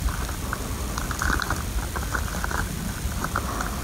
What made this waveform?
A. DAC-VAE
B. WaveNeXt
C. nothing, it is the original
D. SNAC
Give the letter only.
C